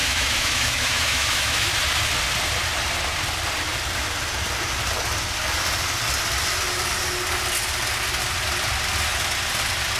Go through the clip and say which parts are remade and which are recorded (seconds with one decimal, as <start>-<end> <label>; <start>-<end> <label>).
0.0-1.7 remade; 1.7-10.0 recorded